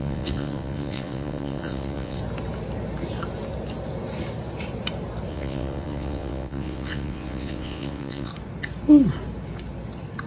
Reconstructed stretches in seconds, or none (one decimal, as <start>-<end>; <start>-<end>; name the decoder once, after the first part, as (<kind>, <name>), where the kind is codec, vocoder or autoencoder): 0.0-2.2 (vocoder, WaveNeXt); 5.3-8.3